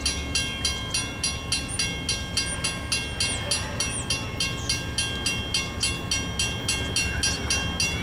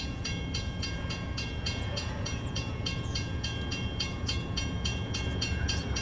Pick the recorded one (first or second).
first